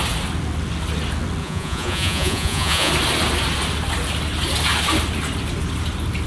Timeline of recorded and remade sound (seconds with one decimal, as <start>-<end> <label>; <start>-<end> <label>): 0.0-1.4 recorded; 1.4-2.9 remade; 2.9-6.3 recorded